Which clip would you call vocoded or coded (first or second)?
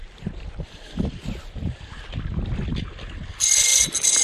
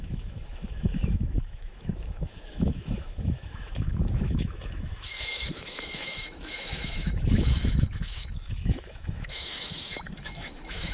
second